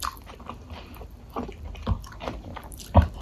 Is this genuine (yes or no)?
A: no